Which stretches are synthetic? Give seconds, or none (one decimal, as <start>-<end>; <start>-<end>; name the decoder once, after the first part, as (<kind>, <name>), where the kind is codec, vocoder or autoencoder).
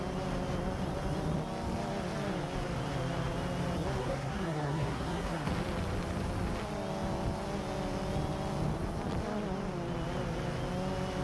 4.0-5.5 (codec, SNAC)